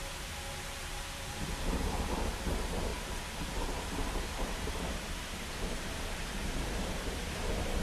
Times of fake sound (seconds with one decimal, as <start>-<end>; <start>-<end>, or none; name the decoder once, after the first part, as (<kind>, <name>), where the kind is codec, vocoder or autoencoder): 0.0-2.9 (vocoder, BigVGAN v2); 3.5-7.8